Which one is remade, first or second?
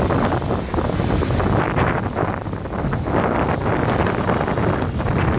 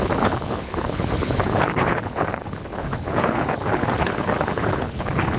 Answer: second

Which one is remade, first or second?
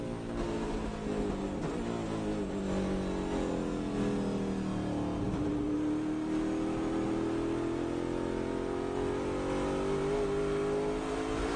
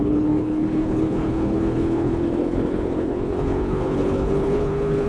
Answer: second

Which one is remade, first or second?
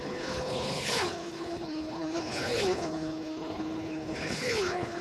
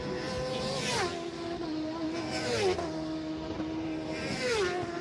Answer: first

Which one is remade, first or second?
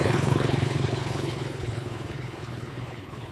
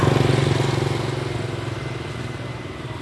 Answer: first